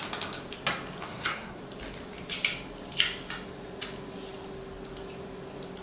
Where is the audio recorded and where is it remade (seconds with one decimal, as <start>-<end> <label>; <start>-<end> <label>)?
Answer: 0.0-1.0 recorded; 1.0-1.6 remade; 1.6-5.8 recorded